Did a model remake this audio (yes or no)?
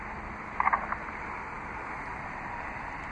no